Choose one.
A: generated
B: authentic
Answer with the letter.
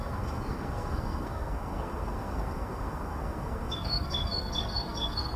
A